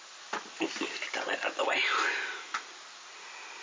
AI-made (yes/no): no